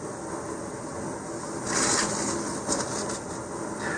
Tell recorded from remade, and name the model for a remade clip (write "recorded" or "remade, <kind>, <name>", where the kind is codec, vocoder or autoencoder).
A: recorded